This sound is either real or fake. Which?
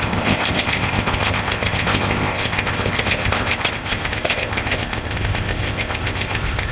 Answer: fake